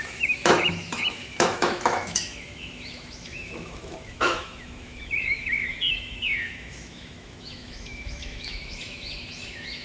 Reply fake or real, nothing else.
fake